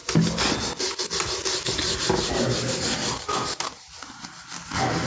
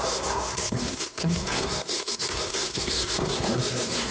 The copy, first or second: second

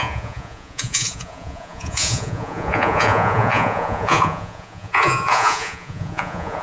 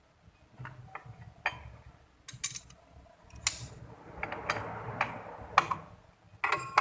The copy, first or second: first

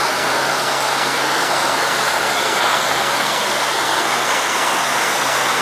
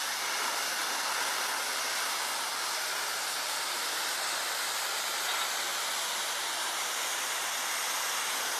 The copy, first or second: first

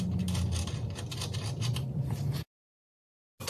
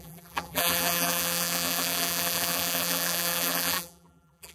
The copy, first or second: second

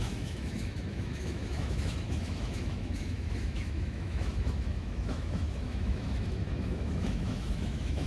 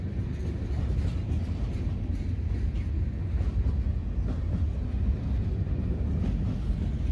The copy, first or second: first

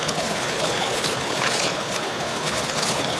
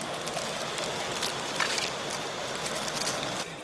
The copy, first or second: first